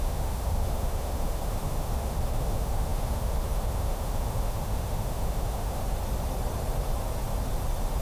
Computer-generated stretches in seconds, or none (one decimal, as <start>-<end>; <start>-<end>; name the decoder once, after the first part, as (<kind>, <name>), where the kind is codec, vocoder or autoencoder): 0.0-5.8 (autoencoder, DAC-VAE)